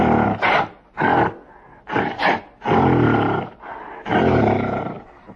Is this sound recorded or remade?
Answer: recorded